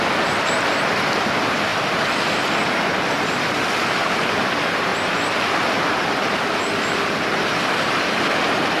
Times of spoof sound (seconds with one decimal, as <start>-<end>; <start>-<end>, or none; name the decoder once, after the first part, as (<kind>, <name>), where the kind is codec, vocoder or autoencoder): 0.0-1.7 (vocoder, BigVGAN v2); 3.2-4.9; 6.0-8.8